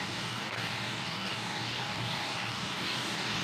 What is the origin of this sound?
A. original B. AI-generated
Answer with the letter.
B